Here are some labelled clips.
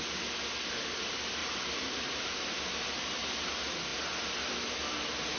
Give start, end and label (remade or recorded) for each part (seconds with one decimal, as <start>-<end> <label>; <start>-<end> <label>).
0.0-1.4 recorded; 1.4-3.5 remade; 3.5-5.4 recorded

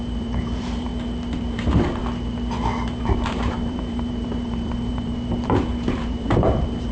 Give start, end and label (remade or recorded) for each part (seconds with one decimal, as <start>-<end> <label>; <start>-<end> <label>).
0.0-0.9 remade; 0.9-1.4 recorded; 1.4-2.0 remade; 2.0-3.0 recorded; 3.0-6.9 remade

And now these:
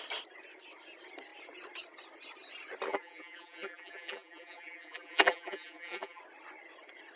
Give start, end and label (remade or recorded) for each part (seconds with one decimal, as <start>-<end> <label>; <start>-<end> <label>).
0.0-2.9 recorded; 2.9-6.2 remade; 6.2-7.2 recorded